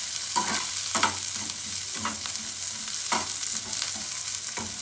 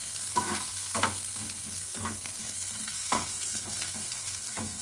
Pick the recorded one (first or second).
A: first